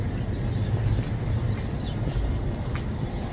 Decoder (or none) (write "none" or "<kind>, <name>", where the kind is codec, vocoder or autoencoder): none